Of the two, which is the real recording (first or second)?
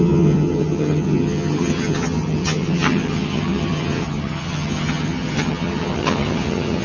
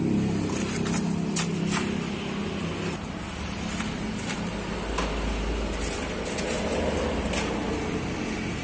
second